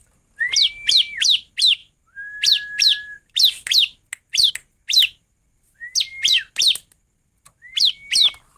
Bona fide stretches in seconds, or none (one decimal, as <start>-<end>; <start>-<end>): 0.0-8.6